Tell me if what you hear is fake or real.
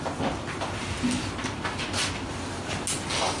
real